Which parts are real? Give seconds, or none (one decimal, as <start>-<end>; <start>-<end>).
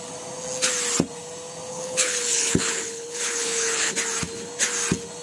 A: 0.0-1.7; 3.9-5.2